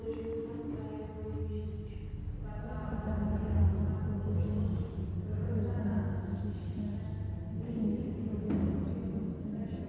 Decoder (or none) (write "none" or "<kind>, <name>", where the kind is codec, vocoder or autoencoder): none